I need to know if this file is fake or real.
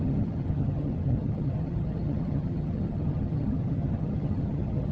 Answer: fake